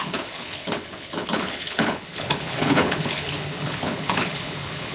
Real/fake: fake